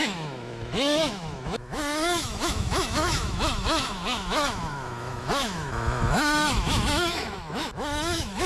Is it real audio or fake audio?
fake